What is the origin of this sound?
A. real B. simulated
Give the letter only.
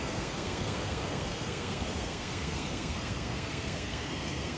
B